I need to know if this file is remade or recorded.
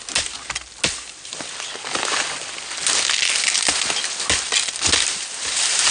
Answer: recorded